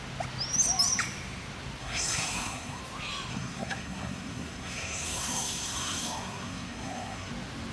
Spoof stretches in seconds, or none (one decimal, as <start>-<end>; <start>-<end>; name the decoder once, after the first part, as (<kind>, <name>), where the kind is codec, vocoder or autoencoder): 1.8-2.8 (codec, SNAC); 3.3-7.3